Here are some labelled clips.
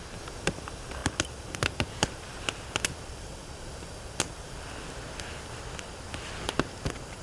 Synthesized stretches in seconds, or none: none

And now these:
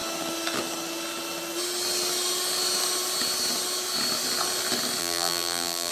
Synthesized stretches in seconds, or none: 5.0-5.9 (vocoder, BigVGAN v2)

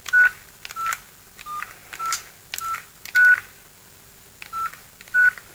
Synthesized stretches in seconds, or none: none

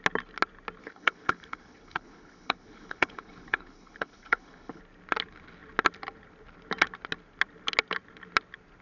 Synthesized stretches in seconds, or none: 0.8-4.8 (codec, HILCodec)

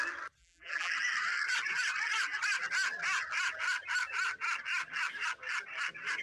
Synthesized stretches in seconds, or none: 0.4-0.9 (vocoder, BigVGAN v2)

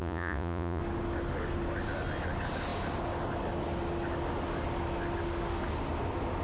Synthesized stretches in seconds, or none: 0.0-0.8 (vocoder, Vocos)

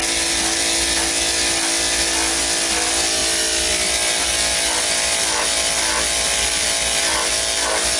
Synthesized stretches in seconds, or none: none

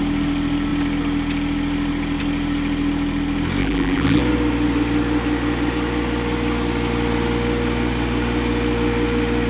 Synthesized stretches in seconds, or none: 3.6-4.2 (vocoder, BigVGAN v2)